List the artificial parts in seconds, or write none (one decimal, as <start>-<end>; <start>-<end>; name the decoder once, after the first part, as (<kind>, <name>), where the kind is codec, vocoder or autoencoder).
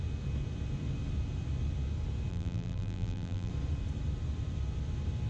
2.3-3.5 (vocoder, BigVGAN v2)